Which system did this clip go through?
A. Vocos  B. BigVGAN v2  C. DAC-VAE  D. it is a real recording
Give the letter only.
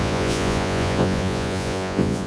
A